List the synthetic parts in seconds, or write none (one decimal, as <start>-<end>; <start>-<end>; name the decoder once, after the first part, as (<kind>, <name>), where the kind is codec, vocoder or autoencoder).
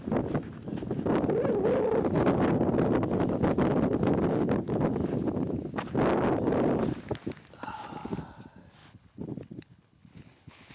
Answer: 8.8-10.7 (codec, HILCodec)